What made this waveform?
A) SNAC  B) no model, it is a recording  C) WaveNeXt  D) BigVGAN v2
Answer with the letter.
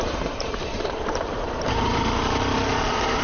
D